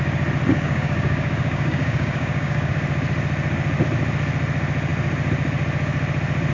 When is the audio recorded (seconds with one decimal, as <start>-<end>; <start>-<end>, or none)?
0.0-0.5; 2.7-6.5

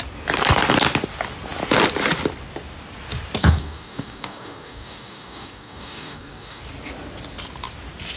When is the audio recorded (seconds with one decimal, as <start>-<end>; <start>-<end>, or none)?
0.0-3.4; 6.6-8.2

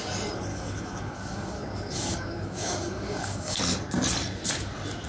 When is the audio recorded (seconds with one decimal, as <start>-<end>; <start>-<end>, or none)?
0.0-0.5; 3.6-5.1

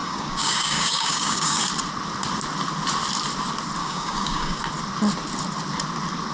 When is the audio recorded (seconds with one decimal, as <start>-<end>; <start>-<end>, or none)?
1.6-3.8; 4.6-6.3

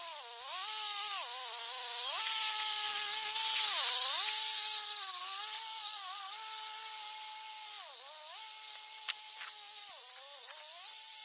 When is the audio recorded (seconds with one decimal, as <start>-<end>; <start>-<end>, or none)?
0.0-1.6; 2.2-11.2